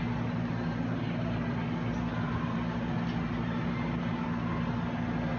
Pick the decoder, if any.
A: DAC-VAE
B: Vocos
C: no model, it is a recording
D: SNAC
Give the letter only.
C